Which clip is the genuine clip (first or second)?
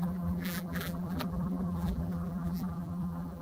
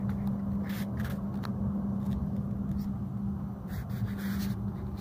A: second